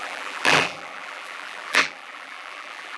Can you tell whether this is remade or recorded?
remade